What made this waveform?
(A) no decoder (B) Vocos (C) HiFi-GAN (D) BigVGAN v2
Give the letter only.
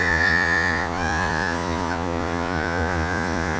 B